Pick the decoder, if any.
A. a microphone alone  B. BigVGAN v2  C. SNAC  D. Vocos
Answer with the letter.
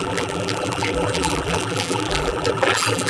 B